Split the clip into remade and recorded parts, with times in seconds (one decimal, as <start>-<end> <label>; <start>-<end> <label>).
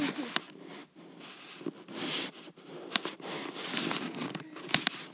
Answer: 0.0-5.1 recorded